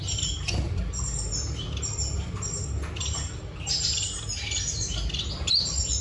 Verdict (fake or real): real